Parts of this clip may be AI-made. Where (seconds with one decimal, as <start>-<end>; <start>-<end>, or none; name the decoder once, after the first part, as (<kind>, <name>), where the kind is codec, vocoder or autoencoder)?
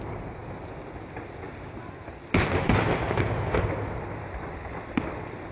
none